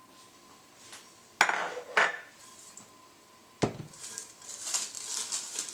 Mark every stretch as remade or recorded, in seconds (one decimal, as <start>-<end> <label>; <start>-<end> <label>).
0.0-5.7 recorded